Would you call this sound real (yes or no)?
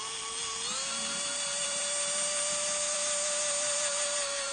no